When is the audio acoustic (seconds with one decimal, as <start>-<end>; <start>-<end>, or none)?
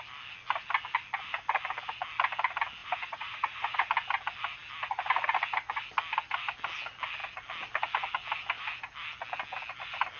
0.0-2.8; 3.9-10.2